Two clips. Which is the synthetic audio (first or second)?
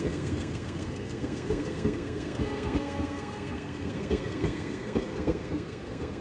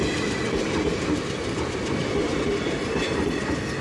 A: first